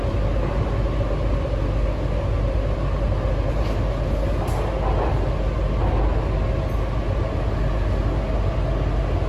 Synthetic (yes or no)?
no